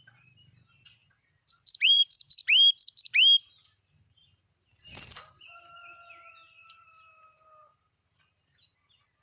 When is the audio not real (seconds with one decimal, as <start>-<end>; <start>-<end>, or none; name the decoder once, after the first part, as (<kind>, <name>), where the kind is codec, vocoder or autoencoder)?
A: 0.0-2.4 (vocoder, BigVGAN v2); 3.4-9.2